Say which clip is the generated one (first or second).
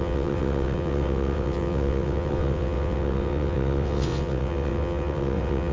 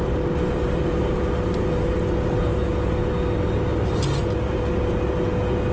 first